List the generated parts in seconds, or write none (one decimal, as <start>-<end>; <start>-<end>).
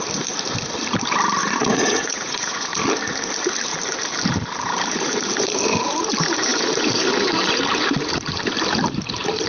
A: 1.4-2.7